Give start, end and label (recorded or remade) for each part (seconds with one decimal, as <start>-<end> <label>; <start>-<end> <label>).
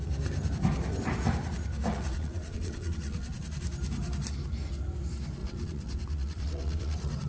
0.0-1.9 recorded; 1.9-3.6 remade; 3.6-5.4 recorded; 5.4-7.3 remade